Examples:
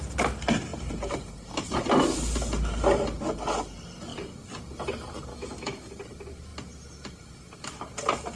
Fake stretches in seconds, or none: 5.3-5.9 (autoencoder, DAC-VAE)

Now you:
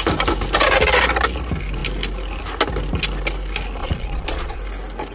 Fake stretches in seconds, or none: 3.8-4.6 (vocoder, Vocos)

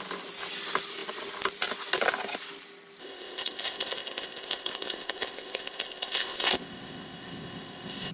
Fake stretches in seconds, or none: 3.0-8.1 (codec, ZipCodec)

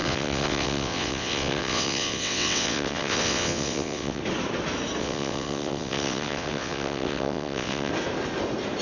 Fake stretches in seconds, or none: 0.0-4.2 (vocoder, WaveNeXt); 5.0-7.9

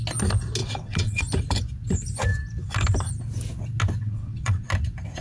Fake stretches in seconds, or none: 0.6-1.2 (vocoder, WaveNeXt); 4.0-4.7

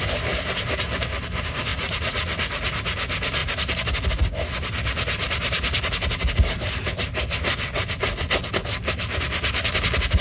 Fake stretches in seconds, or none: 1.7-2.7 (vocoder, Vocos)

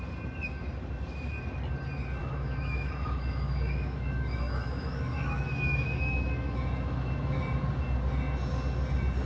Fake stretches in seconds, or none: 2.2-7.4 (autoencoder, DAC-VAE)